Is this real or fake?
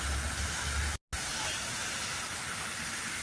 real